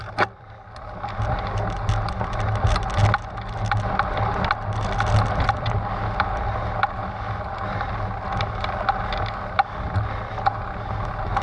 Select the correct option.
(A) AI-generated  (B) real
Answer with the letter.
B